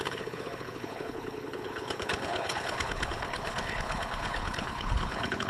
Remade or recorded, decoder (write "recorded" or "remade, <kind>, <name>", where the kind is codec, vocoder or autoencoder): remade, codec, HILCodec